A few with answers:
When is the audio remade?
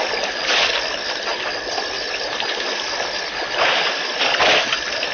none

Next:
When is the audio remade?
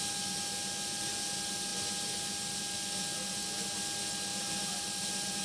4.3-5.4 (vocoder, BigVGAN v2)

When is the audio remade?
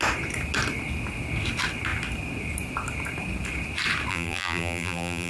4.1-5.3 (vocoder, BigVGAN v2)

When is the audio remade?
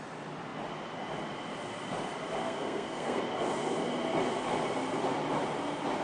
2.4-3.2 (codec, SNAC)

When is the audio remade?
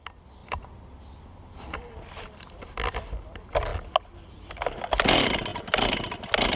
none